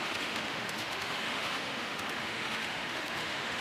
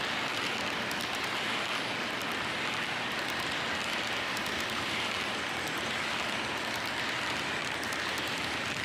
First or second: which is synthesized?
first